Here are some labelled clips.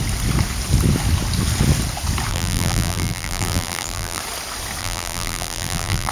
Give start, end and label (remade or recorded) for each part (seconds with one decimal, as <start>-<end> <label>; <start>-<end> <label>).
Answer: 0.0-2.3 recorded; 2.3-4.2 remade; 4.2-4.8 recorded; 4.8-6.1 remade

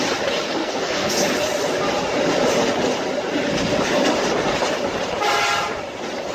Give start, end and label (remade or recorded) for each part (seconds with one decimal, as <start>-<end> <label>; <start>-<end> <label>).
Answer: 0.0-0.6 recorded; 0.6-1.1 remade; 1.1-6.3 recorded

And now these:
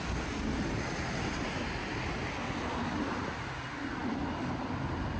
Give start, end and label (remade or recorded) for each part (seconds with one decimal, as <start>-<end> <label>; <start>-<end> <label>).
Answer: 0.0-5.2 recorded

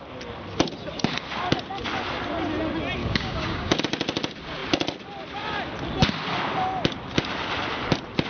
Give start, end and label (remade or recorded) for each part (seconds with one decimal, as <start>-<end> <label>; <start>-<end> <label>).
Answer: 0.0-3.0 recorded; 3.0-3.8 remade; 3.8-8.3 recorded

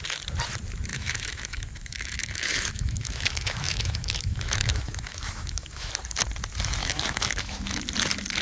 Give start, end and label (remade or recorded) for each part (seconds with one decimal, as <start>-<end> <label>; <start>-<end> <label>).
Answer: 0.0-0.9 recorded; 0.9-5.9 remade; 5.9-6.8 recorded; 6.8-7.8 remade; 7.8-8.4 recorded

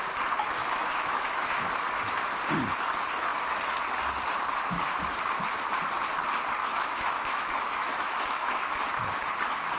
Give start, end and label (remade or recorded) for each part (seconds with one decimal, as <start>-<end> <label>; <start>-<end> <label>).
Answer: 0.0-0.6 recorded; 0.6-2.0 remade; 2.0-6.6 recorded; 6.6-8.9 remade; 8.9-9.8 recorded